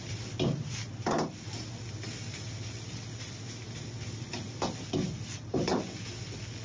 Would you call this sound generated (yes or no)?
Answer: no